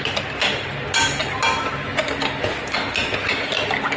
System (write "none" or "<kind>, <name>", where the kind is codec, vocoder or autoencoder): none